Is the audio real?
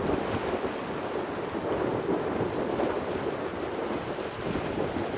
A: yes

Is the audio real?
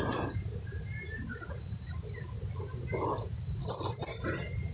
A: no